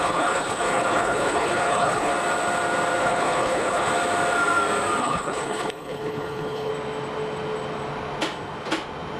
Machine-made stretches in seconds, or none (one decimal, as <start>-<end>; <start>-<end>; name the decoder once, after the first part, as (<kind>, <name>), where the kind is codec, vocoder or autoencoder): 0.0-2.1 (codec, HILCodec); 3.0-3.9; 5.0-6.7